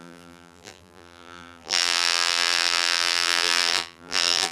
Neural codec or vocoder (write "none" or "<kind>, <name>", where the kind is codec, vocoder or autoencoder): vocoder, BigVGAN v2